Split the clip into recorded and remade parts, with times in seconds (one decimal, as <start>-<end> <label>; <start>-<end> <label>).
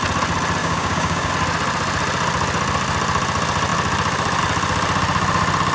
0.0-0.6 recorded; 0.6-1.3 remade; 1.3-5.7 recorded